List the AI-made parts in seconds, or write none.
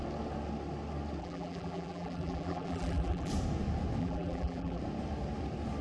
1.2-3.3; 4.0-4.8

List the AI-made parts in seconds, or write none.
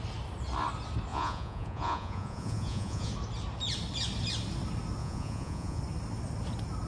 1.1-3.1; 5.0-5.8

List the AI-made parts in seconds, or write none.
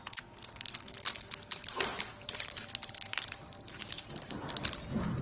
1.9-4.5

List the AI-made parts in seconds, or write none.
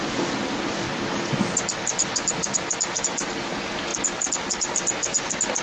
none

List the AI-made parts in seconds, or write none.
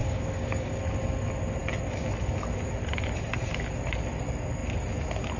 0.0-0.8